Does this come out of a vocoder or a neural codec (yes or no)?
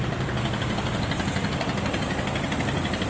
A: no